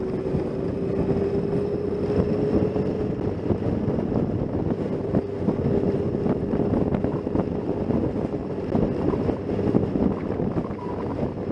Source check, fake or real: real